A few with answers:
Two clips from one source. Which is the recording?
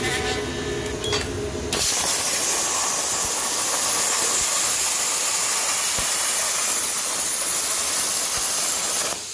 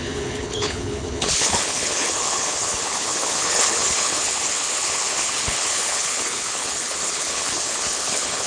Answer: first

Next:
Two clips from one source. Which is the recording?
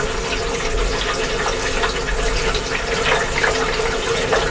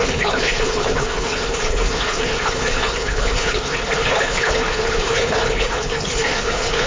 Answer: first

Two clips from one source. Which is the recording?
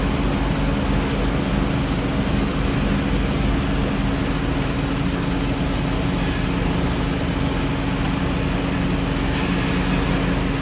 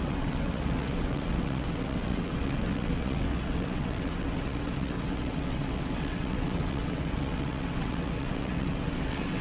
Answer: first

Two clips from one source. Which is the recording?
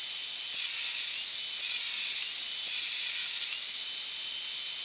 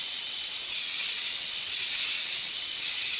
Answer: first